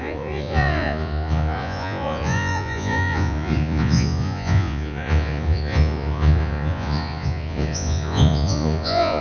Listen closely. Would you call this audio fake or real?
fake